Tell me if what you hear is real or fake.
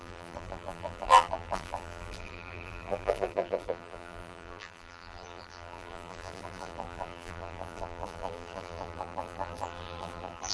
fake